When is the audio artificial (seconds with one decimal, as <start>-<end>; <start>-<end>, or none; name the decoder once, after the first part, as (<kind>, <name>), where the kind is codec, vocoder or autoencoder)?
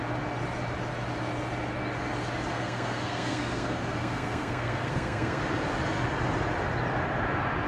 2.5-5.4 (codec, SNAC)